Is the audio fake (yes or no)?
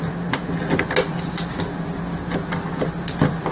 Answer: no